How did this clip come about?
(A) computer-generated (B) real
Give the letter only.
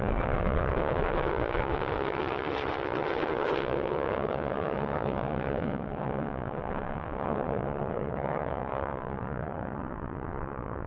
A